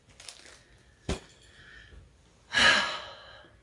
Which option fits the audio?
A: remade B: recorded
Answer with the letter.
B